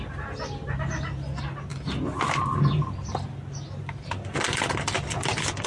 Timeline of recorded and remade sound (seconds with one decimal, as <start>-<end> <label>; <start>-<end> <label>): 0.0-5.7 recorded